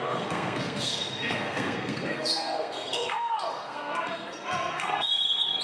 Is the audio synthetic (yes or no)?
yes